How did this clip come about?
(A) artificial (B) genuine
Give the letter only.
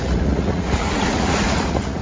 A